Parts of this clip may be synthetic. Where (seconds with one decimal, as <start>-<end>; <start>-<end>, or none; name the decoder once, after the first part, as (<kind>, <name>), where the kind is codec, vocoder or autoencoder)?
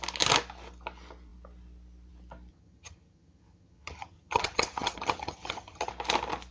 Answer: 2.5-5.9 (vocoder, HiFi-GAN)